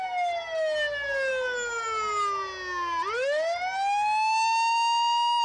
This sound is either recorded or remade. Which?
recorded